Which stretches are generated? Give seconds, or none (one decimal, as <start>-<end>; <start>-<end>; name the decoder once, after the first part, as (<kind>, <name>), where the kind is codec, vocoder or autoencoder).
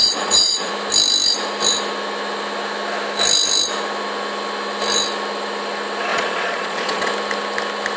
0.0-0.7 (vocoder, Vocos); 6.1-7.1